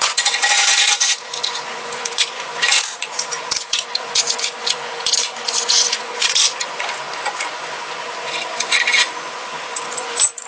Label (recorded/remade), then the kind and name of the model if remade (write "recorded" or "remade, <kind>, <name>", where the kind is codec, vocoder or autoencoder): remade, vocoder, Vocos